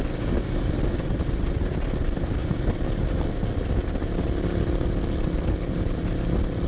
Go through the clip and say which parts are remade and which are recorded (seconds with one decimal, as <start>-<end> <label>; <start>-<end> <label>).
0.0-6.7 recorded